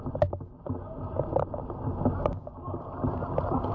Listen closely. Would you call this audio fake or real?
real